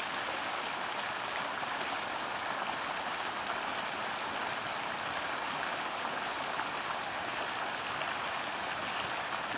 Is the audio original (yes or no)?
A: yes